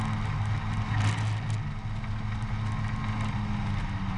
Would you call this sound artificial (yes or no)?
no